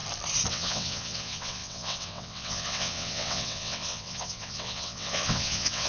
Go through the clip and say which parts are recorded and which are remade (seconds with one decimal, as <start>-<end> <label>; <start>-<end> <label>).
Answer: 0.0-0.5 recorded; 0.5-5.9 remade